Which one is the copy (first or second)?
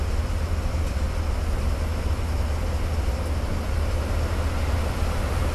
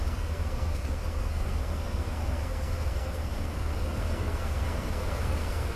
second